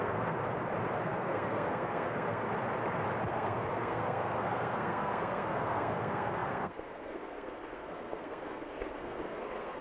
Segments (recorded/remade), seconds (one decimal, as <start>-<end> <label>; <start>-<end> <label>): 0.0-0.4 remade; 0.4-1.0 recorded; 1.0-2.4 remade; 2.4-3.3 recorded; 3.3-9.8 remade